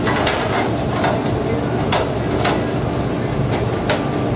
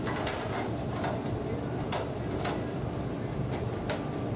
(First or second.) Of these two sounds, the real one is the first